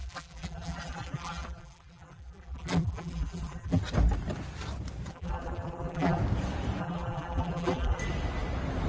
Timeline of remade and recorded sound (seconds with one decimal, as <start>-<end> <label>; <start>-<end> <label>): 0.0-3.8 remade; 3.8-5.1 recorded; 5.1-6.2 remade; 6.2-6.8 recorded; 6.8-8.0 remade; 8.0-8.9 recorded

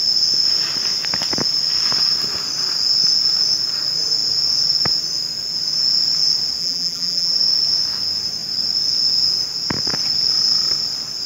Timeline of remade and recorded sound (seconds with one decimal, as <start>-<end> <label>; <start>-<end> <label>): 0.0-6.6 recorded; 6.6-7.3 remade; 7.3-11.3 recorded